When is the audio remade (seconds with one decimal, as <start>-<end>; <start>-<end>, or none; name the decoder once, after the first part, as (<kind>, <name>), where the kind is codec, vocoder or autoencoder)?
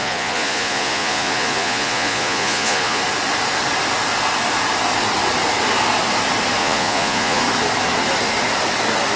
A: 0.0-3.0 (vocoder, Vocos); 6.6-7.4